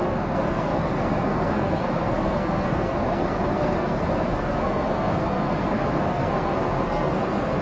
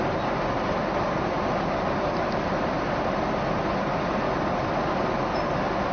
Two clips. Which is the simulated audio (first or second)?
first